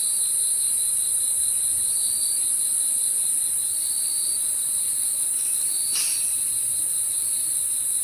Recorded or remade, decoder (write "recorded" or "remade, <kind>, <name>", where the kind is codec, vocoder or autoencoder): remade, vocoder, BigVGAN v2